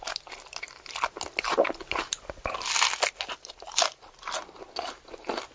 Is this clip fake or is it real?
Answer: real